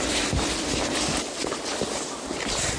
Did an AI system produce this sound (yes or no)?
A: no